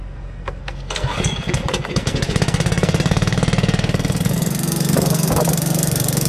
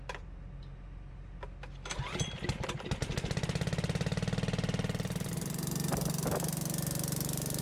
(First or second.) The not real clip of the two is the first